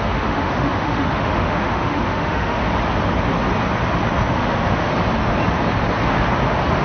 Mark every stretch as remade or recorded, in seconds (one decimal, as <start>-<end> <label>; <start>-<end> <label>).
0.0-2.6 remade; 2.6-4.3 recorded; 4.3-4.9 remade; 4.9-6.8 recorded